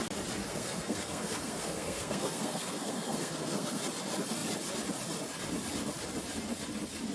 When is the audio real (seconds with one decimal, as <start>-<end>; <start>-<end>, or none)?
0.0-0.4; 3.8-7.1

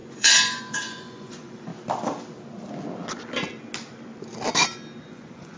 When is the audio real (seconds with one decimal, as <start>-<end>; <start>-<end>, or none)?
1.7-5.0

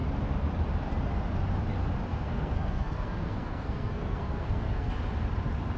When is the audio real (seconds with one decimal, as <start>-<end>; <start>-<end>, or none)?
0.0-2.1; 4.9-5.8

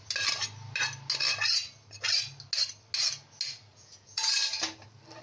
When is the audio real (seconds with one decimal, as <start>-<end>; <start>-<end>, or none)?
0.0-3.7; 4.3-5.2